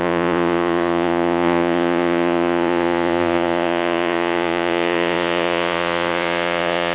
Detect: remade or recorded remade